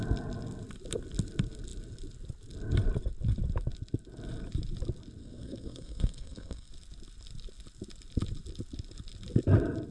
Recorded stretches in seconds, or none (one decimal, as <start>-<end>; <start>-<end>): 0.0-5.2; 6.7-9.9